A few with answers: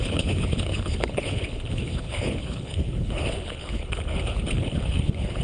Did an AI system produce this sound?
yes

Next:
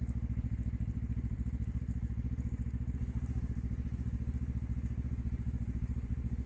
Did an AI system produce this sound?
no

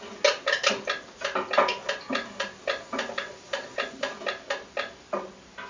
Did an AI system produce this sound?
no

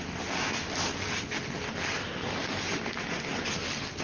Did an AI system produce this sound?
no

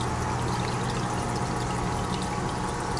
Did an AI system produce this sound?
no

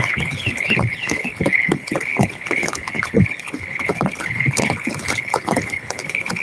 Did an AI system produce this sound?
yes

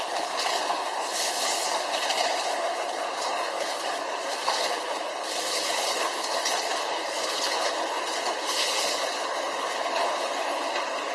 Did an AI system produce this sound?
yes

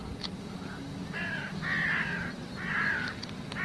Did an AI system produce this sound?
no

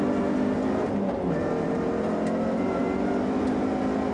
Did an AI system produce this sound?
no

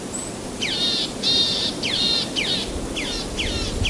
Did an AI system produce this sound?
no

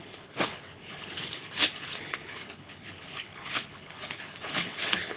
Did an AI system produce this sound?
yes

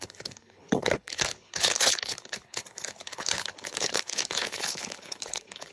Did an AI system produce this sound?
yes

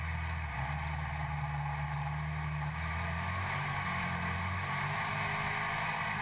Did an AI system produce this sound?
no